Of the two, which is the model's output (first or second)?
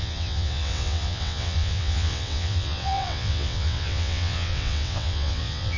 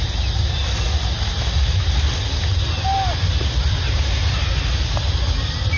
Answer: first